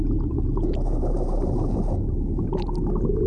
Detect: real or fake real